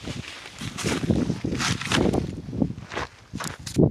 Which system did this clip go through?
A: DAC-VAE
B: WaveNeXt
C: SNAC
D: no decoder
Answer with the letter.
D